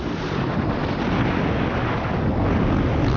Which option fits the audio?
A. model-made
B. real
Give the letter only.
B